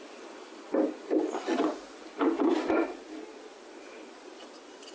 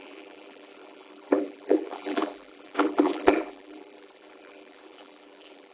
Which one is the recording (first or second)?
first